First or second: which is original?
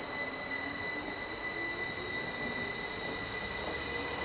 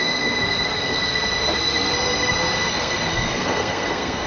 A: first